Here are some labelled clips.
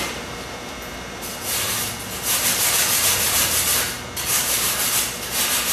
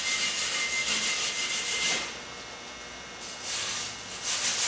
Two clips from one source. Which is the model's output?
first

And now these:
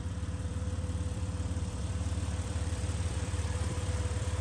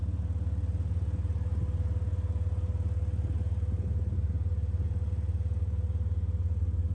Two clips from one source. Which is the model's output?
first